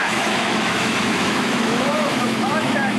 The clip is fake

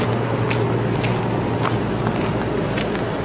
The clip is real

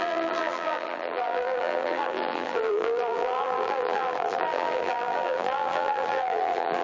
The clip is fake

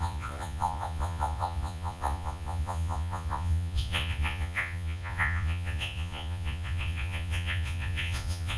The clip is fake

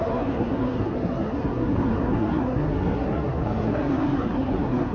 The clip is fake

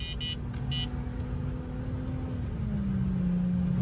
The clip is real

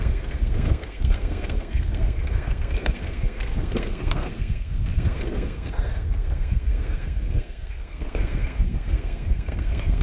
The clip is fake